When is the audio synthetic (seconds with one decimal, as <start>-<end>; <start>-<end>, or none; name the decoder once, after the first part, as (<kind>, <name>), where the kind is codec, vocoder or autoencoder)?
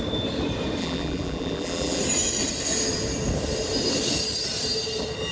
0.8-2.0 (vocoder, BigVGAN v2)